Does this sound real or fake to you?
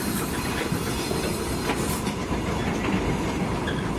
real